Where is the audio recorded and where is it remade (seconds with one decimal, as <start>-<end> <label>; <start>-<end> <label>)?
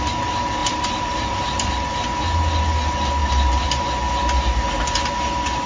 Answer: 0.0-0.6 recorded; 0.6-1.7 remade; 1.7-3.2 recorded; 3.2-3.9 remade; 3.9-5.7 recorded